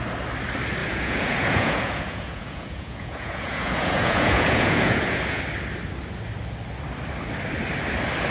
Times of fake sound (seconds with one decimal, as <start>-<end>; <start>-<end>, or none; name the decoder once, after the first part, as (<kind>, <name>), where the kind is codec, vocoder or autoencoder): 0.8-5.4 (vocoder, Vocos)